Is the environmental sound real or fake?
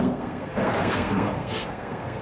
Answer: fake